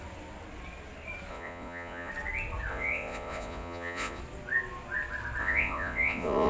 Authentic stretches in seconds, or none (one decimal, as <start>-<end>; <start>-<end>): 0.0-1.3; 2.1-2.7; 4.2-5.4